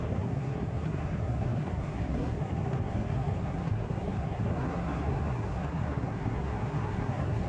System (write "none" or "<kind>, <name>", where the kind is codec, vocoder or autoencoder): codec, SNAC